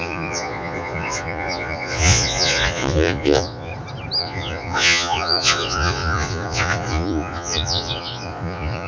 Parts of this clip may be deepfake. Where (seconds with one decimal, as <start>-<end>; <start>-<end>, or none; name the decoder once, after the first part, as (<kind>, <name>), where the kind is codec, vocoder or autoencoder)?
0.0-3.7 (vocoder, Vocos); 4.2-8.9